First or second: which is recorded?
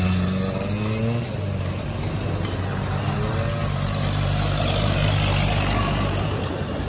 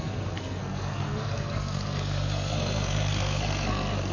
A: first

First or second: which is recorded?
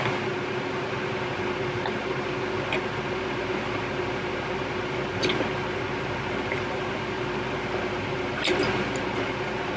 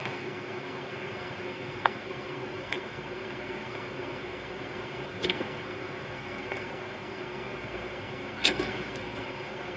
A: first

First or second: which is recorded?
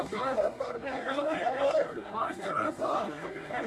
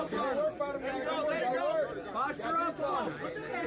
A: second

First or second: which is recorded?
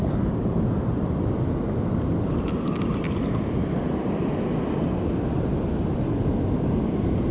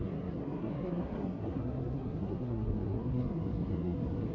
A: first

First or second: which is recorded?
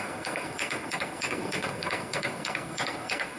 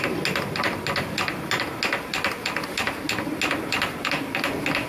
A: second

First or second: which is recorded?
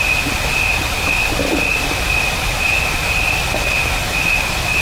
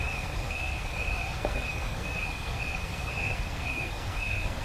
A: first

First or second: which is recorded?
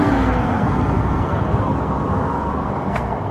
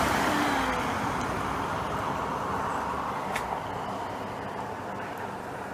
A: second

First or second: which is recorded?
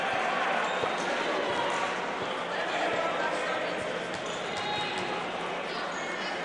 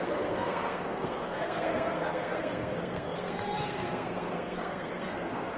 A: first